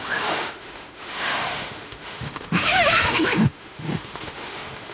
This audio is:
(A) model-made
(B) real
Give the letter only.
A